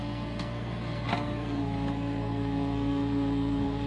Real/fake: fake